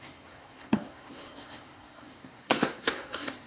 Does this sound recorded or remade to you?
remade